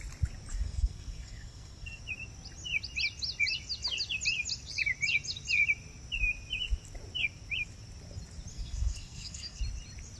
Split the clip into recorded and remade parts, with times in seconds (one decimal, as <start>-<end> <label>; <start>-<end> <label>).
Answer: 0.0-0.5 recorded; 0.5-2.0 remade; 2.0-8.5 recorded; 8.5-9.6 remade; 9.6-10.2 recorded